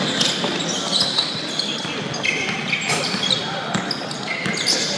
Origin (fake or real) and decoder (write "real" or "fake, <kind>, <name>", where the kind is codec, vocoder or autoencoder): real